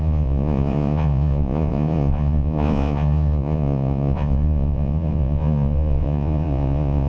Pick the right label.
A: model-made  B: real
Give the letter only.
A